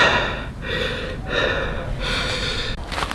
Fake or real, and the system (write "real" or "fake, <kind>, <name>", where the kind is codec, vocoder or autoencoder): real